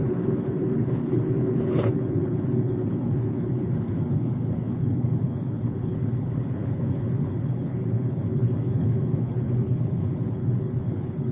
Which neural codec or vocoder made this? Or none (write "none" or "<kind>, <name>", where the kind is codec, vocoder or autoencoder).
codec, HILCodec